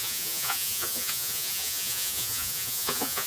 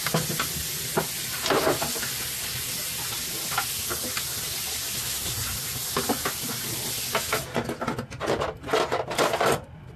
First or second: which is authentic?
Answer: second